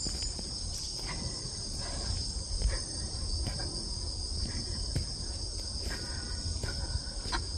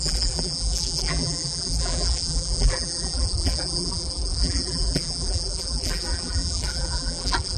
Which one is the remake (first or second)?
second